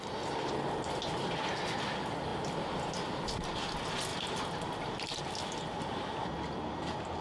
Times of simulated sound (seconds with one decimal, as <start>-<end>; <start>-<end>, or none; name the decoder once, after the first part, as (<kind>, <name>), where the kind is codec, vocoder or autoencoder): 4.1-5.2 (vocoder, BigVGAN v2)